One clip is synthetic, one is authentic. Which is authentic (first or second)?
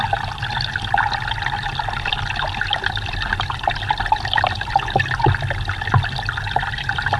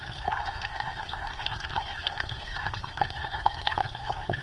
first